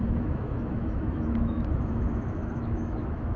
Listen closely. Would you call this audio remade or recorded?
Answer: remade